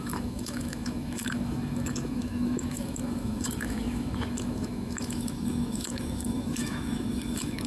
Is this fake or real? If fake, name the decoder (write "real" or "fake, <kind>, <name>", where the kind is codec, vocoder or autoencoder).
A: fake, autoencoder, DAC-VAE